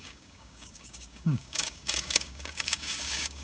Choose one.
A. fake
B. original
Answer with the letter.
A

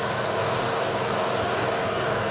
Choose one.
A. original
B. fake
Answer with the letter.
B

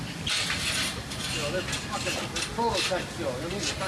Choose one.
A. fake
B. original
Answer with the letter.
B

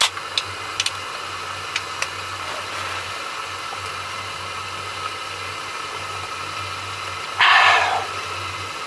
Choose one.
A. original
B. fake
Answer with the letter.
A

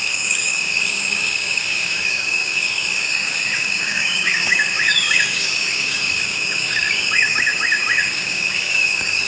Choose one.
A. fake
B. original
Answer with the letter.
A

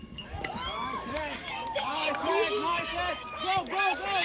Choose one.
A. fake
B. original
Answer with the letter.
A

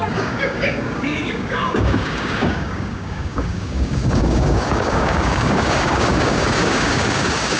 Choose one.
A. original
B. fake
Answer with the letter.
B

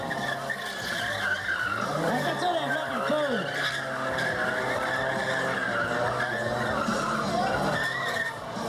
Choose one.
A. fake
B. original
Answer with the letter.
B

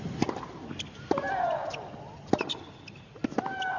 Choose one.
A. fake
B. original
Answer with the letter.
B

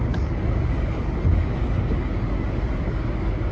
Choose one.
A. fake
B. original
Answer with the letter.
A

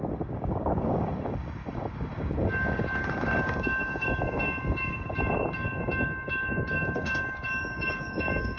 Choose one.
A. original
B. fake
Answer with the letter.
B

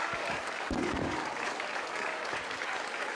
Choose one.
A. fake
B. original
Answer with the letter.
A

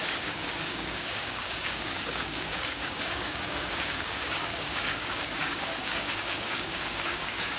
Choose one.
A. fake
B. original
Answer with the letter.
A